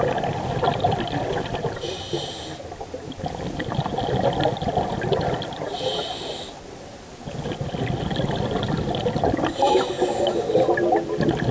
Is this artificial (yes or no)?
no